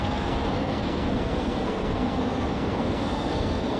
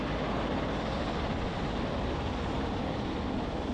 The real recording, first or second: second